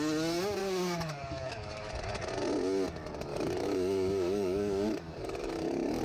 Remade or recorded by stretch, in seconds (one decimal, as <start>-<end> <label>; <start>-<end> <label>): 0.0-0.6 recorded; 0.6-1.9 remade; 1.9-3.3 recorded; 3.3-6.0 remade